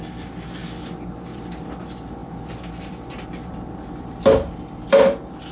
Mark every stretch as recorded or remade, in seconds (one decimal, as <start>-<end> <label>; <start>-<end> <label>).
0.0-0.6 remade; 0.6-1.1 recorded; 1.1-5.5 remade